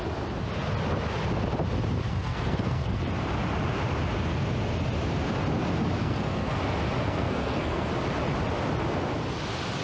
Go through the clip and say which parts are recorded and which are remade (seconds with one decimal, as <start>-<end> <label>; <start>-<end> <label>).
0.0-2.1 recorded; 2.1-3.0 remade; 3.0-6.0 recorded; 6.0-6.6 remade; 6.6-7.0 recorded; 7.0-7.9 remade; 7.9-9.8 recorded